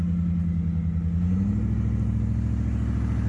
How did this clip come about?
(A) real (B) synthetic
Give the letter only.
A